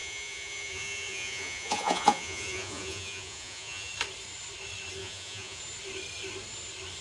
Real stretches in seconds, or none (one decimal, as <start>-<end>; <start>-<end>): 3.9-5.0; 5.6-7.0